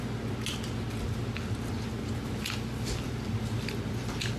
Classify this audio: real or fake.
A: real